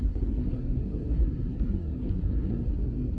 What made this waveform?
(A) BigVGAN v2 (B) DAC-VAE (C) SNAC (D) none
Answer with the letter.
C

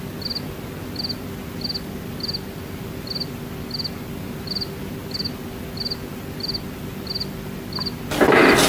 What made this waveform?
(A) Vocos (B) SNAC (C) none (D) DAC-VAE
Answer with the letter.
C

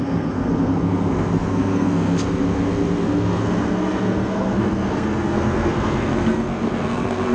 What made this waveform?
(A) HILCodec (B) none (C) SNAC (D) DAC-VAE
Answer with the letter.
C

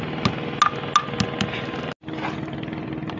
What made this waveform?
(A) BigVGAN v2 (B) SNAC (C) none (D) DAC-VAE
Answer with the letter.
C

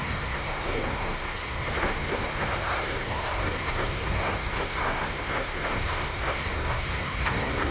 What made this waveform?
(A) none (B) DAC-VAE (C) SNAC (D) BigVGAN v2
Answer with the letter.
C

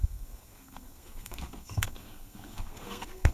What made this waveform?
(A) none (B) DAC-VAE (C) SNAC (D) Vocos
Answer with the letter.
C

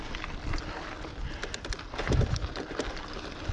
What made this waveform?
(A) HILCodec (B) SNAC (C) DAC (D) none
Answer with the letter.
D